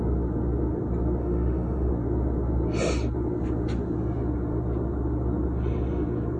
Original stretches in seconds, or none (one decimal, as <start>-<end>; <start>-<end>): 0.0-1.2; 1.9-6.4